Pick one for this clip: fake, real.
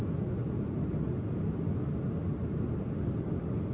real